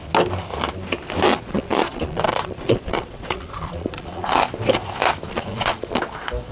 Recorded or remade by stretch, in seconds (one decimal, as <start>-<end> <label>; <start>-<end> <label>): 0.0-1.3 recorded; 1.3-4.3 remade; 4.3-5.3 recorded; 5.3-6.0 remade; 6.0-6.5 recorded